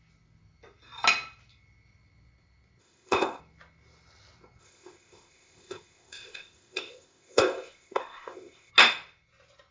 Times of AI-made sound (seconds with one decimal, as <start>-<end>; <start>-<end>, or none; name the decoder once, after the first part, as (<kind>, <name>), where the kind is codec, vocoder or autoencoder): 2.8-3.4 (codec, ZipCodec); 4.6-8.7